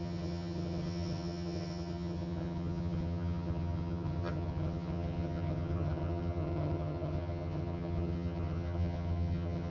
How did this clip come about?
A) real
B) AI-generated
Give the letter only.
B